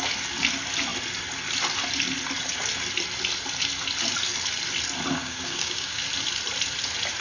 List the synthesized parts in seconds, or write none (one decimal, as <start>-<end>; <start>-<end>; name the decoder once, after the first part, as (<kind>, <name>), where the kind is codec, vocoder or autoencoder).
5.2-6.0 (codec, DAC)

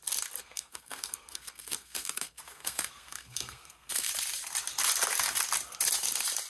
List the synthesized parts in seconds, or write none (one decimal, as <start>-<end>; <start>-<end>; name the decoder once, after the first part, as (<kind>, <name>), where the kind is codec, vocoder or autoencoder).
0.4-4.1 (codec, SNAC)

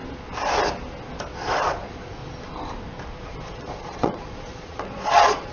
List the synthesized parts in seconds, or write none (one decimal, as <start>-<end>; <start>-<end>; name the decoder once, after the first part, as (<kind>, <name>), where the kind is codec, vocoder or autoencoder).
1.5-2.2 (vocoder, Vocos); 3.3-5.5

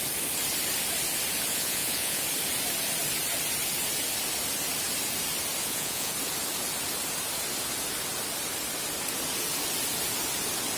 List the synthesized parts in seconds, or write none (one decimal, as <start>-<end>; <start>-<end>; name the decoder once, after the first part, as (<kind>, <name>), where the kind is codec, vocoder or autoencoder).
1.5-2.2 (vocoder, Vocos); 5.6-6.1

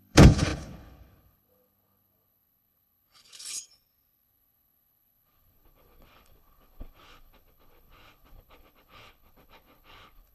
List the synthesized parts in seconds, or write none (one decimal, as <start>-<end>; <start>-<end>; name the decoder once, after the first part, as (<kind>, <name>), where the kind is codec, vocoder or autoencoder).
0.0-10.3 (codec, HILCodec)

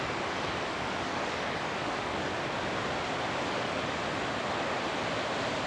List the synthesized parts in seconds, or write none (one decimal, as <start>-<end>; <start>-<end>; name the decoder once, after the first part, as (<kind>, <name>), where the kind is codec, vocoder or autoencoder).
0.0-2.3 (codec, DAC); 3.5-4.0

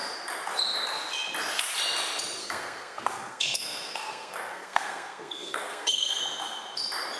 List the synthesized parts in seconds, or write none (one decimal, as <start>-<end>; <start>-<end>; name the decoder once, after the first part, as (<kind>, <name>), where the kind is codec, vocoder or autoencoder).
2.4-6.2 (codec, SNAC)